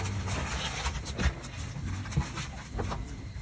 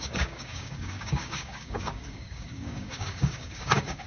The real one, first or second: first